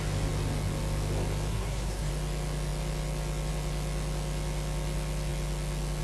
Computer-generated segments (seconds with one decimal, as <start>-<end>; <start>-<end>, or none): 1.5-2.1